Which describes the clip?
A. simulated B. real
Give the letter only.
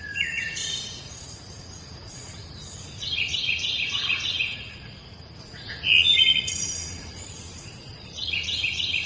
A